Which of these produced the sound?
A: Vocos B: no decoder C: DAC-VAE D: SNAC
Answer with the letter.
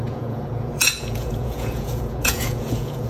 A